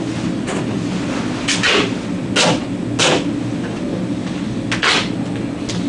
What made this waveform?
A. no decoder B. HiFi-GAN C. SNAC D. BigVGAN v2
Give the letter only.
A